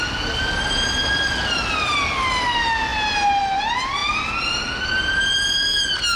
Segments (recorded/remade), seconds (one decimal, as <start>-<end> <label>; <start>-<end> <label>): 0.0-6.2 recorded